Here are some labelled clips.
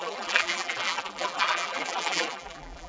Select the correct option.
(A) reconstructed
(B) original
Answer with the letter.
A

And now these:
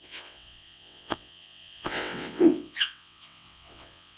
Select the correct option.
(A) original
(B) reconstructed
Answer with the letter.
B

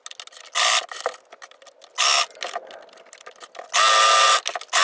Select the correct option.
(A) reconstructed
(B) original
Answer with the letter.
B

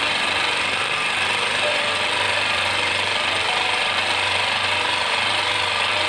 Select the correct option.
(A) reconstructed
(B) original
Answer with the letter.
A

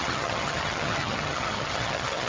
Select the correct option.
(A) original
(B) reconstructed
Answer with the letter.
B